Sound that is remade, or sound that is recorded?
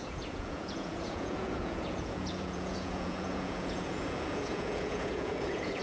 remade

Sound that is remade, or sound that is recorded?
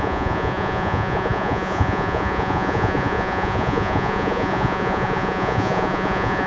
remade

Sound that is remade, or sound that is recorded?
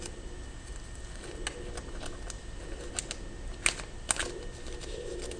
recorded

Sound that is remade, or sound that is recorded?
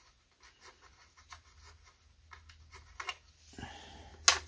recorded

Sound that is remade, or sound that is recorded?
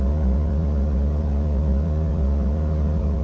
remade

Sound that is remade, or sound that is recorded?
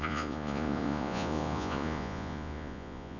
remade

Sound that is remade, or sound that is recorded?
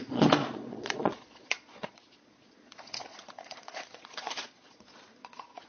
remade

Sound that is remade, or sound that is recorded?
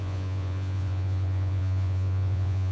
remade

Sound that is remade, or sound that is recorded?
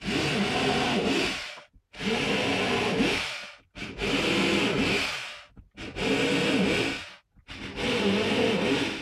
recorded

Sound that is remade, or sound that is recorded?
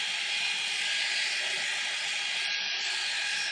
recorded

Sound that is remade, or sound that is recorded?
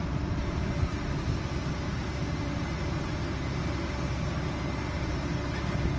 recorded